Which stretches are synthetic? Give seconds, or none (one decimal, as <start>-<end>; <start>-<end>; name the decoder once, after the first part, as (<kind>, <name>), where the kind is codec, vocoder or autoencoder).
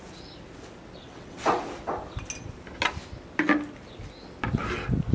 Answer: 1.0-1.6 (vocoder, WaveNeXt)